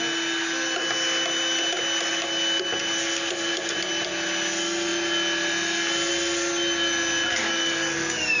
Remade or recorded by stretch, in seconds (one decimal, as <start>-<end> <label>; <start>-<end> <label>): 0.0-7.3 recorded; 7.3-8.4 remade